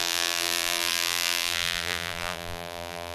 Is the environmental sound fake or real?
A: fake